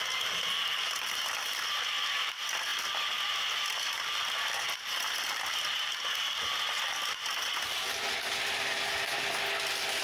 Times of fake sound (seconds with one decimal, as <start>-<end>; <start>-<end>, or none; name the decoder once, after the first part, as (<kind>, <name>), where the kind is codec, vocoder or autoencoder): 2.7-3.3 (vocoder, BigVGAN v2)